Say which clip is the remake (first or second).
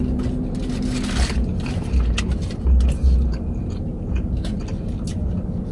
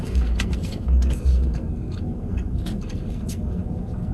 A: second